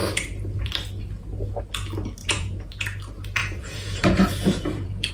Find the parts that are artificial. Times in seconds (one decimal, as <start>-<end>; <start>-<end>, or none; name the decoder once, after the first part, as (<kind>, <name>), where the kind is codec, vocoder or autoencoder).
2.2-2.7 (vocoder, Vocos); 3.4-5.1